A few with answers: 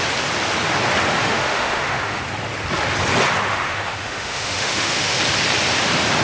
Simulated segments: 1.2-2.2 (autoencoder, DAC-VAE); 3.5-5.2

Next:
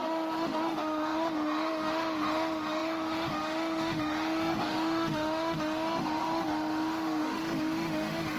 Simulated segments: 0.0-8.4 (autoencoder, DAC-VAE)

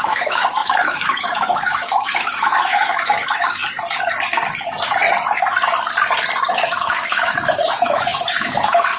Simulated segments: 0.0-3.6 (autoencoder, DAC-VAE); 6.5-9.0

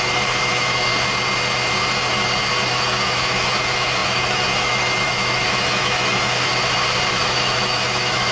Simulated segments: 0.0-0.9 (autoencoder, DAC-VAE); 2.7-6.5; 7.1-8.3

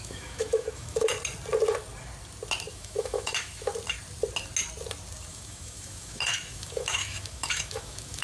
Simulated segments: 0.0-1.1 (autoencoder, DAC-VAE); 2.7-3.7; 5.3-8.2

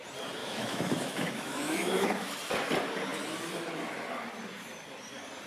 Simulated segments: 0.4-2.3 (autoencoder, DAC-VAE)